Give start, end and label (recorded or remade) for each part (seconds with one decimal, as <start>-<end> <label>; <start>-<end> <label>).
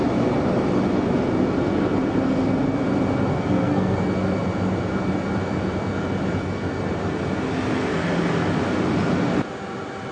0.0-3.3 recorded; 3.3-4.0 remade; 4.0-10.1 recorded